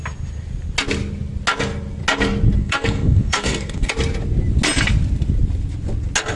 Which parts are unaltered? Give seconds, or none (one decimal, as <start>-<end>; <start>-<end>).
0.0-2.6; 3.9-6.4